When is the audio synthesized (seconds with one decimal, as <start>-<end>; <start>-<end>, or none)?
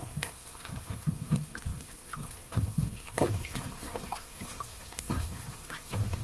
0.0-6.2